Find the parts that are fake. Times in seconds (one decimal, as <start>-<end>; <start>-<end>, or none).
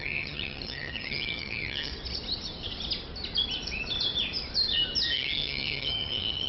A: 0.0-1.9; 5.1-6.5